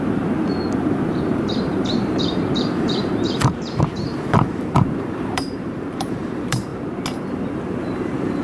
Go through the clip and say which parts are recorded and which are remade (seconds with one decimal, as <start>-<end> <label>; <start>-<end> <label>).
0.0-6.7 remade; 6.7-7.8 recorded; 7.8-8.4 remade